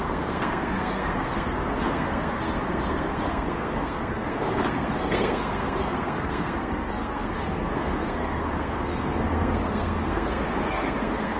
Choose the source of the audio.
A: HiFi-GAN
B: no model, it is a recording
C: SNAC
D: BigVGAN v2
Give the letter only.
C